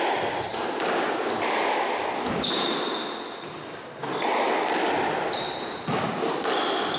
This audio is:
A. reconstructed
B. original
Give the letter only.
B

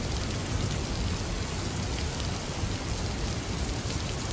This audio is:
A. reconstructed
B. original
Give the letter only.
B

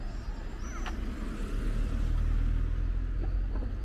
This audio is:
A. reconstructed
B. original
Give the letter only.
B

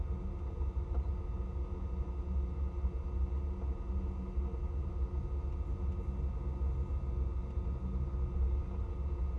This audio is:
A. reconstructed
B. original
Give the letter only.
B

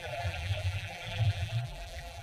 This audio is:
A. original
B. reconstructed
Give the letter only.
B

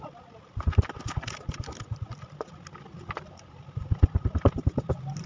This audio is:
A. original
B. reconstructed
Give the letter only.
A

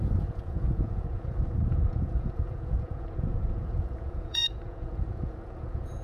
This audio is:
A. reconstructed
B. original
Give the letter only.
A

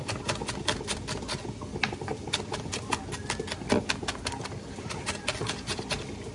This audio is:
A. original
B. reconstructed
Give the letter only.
A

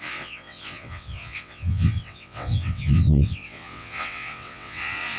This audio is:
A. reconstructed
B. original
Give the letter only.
A